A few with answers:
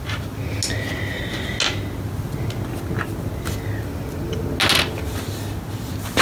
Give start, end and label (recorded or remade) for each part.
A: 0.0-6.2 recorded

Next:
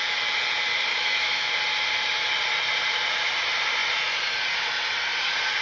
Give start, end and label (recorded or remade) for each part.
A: 0.0-0.9 recorded; 0.9-1.5 remade; 1.5-5.6 recorded

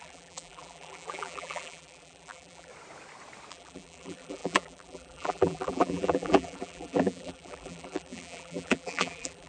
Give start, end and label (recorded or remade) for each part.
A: 0.0-2.7 remade; 2.7-3.5 recorded; 3.5-9.5 remade

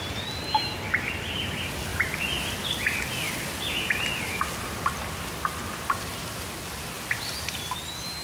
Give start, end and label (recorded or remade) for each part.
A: 0.0-8.2 recorded

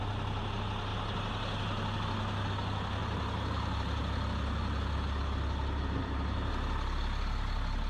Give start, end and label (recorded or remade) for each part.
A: 0.0-3.0 recorded; 3.0-4.0 remade; 4.0-6.0 recorded; 6.0-6.5 remade; 6.5-7.9 recorded

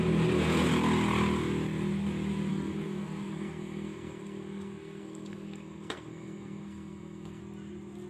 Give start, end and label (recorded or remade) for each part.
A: 0.0-2.5 recorded; 2.5-7.4 remade; 7.4-8.1 recorded

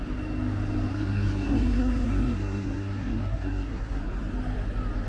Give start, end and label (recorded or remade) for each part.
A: 0.0-0.9 recorded; 0.9-4.0 remade; 4.0-5.1 recorded

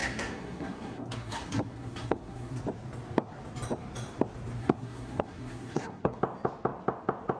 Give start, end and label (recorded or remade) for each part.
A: 0.0-2.6 remade; 2.6-4.6 recorded; 4.6-6.2 remade; 6.2-7.4 recorded